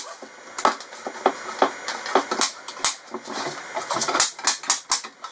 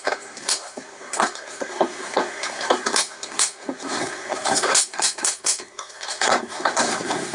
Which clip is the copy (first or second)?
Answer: second